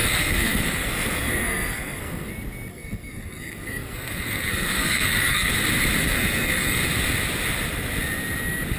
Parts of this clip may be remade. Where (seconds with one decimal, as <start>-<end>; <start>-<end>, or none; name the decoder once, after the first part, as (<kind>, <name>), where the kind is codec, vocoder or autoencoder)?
0.0-2.3 (codec, SNAC); 2.7-5.5; 6.0-6.8